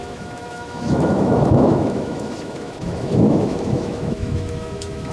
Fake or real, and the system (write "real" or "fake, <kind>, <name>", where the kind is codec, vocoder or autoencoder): fake, autoencoder, DAC-VAE